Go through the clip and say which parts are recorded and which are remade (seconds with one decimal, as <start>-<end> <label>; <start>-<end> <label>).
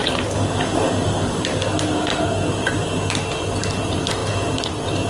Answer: 0.0-5.1 recorded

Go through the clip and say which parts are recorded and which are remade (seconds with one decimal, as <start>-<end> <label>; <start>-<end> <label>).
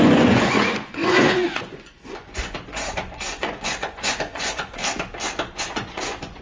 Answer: 0.0-4.8 remade; 4.8-5.5 recorded; 5.5-6.4 remade